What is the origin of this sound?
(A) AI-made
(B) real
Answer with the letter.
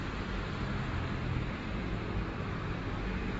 B